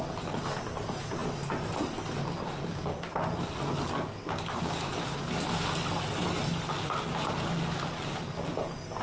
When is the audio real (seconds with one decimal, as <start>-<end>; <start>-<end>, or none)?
0.0-9.0